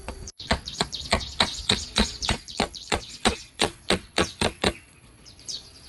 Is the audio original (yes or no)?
no